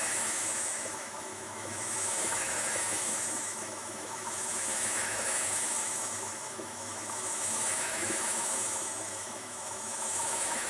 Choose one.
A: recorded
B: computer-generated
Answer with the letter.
B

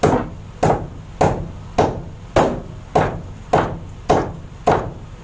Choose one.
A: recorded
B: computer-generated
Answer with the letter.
A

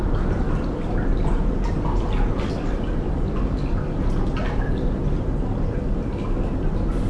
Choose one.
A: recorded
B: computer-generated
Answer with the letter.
A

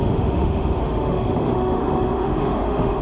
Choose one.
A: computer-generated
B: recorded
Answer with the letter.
A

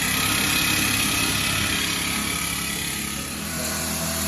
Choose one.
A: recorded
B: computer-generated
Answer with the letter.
A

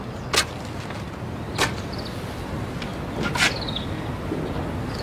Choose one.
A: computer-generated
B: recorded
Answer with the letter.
B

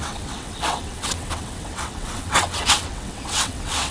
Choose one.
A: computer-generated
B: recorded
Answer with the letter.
A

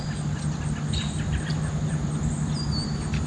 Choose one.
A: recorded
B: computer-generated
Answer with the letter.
A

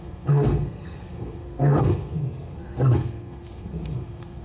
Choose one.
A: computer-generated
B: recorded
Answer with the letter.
A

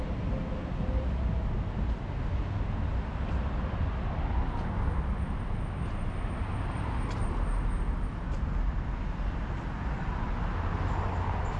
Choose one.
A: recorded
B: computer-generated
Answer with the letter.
A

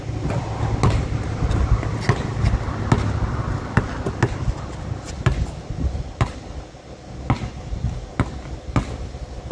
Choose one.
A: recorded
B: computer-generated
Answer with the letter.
A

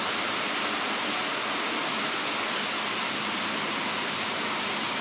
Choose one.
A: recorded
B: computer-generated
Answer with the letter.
A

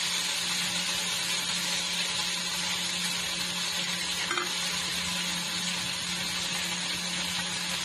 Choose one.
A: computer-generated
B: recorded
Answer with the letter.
B